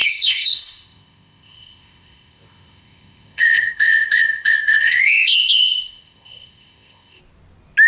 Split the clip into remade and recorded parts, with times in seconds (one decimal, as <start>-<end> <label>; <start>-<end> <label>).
0.0-7.2 remade; 7.2-7.9 recorded